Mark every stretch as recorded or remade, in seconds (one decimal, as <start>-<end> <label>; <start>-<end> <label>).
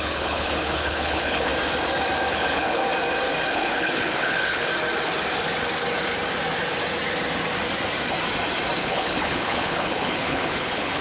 0.0-1.5 remade; 1.5-2.3 recorded; 2.3-2.8 remade; 2.8-3.5 recorded; 3.5-4.7 remade; 4.7-8.8 recorded; 8.8-11.0 remade